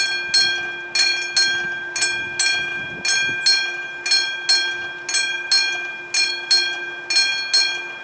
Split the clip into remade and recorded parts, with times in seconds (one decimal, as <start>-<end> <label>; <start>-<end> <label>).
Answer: 0.0-8.0 recorded